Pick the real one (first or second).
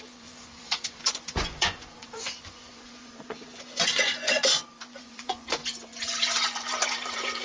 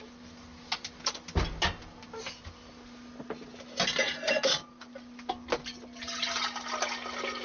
second